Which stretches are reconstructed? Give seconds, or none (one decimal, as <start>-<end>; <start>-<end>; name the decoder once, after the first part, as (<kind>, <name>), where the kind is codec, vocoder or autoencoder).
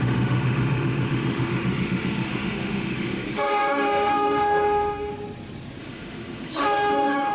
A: 0.0-5.1 (autoencoder, DAC-VAE); 5.8-7.3